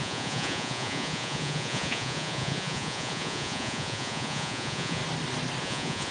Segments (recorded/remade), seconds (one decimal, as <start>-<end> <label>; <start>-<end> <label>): 0.0-5.0 remade; 5.0-5.6 recorded; 5.6-6.1 remade